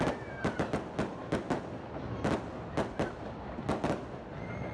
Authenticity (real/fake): real